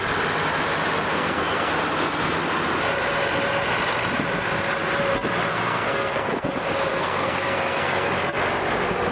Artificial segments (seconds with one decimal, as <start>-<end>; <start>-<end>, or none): 1.1-1.7; 5.5-6.5; 6.9-8.1